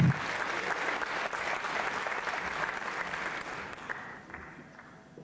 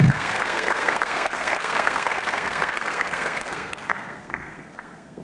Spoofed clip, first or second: second